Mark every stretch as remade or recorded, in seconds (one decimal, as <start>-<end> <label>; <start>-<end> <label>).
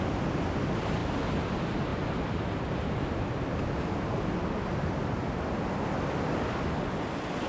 0.0-7.5 recorded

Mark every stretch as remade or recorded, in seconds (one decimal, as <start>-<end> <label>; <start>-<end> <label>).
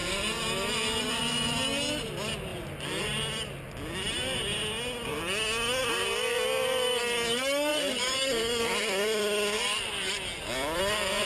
0.0-1.2 remade; 1.2-7.7 recorded; 7.7-10.8 remade; 10.8-11.3 recorded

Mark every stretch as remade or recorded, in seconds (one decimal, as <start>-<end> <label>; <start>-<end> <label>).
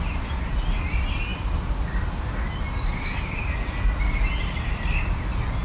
0.0-5.6 recorded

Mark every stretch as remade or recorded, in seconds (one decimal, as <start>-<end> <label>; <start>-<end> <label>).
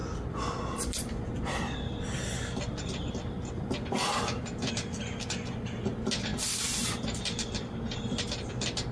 0.0-4.7 remade; 4.7-6.3 recorded; 6.3-8.5 remade; 8.5-8.9 recorded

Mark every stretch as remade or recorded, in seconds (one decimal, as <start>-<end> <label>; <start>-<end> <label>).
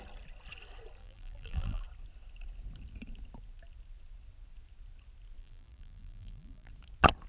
0.0-1.0 recorded; 1.0-1.8 remade; 1.8-5.4 recorded; 5.4-6.7 remade; 6.7-7.3 recorded